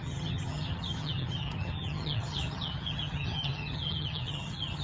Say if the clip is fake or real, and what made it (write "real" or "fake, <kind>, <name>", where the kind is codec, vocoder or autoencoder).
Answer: fake, vocoder, HiFi-GAN